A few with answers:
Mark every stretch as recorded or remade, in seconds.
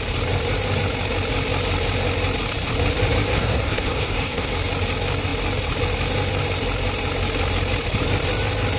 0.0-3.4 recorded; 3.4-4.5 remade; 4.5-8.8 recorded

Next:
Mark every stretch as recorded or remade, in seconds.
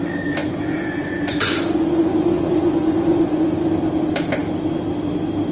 0.0-0.4 recorded; 0.4-3.7 remade; 3.7-5.5 recorded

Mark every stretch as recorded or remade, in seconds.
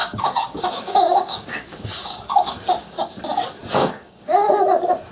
0.0-3.1 remade; 3.1-3.8 recorded; 3.8-4.6 remade; 4.6-5.1 recorded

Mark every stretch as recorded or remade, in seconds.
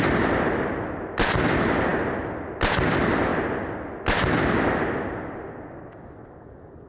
0.0-6.9 recorded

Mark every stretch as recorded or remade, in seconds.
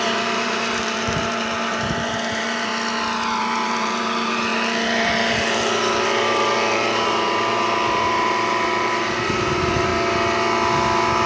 0.0-2.7 remade; 2.7-3.4 recorded; 3.4-9.9 remade; 9.9-11.3 recorded